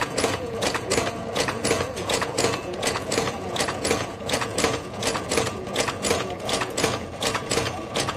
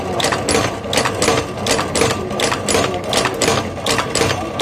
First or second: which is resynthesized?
first